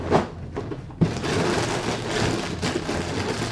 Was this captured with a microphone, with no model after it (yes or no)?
yes